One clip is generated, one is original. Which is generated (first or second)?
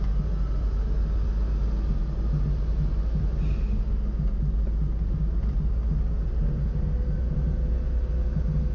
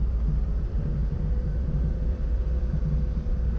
second